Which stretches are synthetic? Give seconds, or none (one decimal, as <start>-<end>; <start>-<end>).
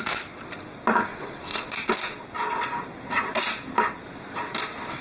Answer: 1.1-1.7